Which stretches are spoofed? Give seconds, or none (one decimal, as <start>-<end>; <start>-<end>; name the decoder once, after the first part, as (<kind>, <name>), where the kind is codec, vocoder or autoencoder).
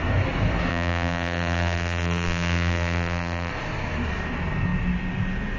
0.7-3.5 (vocoder, BigVGAN v2)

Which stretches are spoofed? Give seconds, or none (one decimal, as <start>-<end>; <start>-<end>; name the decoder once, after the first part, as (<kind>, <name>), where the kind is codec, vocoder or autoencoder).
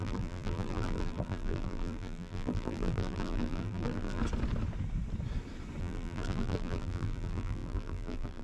0.0-4.2 (vocoder, BigVGAN v2); 5.8-8.4